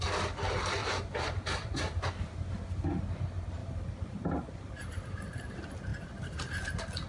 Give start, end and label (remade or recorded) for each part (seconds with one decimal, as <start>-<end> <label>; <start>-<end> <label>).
0.0-0.8 recorded; 0.8-2.3 remade; 2.3-3.6 recorded; 3.6-5.4 remade; 5.4-5.9 recorded; 5.9-6.6 remade; 6.6-7.1 recorded